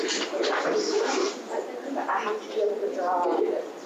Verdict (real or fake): real